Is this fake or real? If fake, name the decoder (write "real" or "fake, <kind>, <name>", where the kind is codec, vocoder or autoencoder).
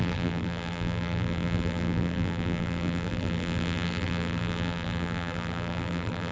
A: fake, vocoder, BigVGAN v2